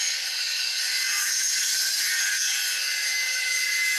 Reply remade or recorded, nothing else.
remade